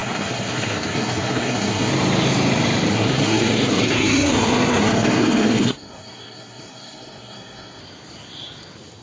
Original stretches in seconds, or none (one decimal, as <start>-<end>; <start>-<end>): 1.9-2.9; 7.8-9.0